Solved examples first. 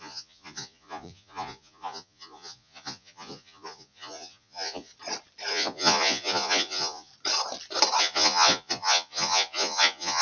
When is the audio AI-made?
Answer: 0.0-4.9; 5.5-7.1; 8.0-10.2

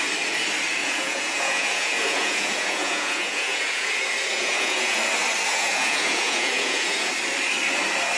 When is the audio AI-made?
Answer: 0.8-3.9; 4.3-5.0; 5.5-7.1

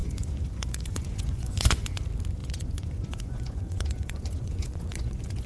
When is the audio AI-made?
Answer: 0.0-2.0; 2.4-5.5

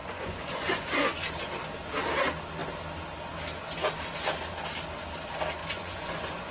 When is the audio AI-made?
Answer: 0.0-1.5; 5.6-6.5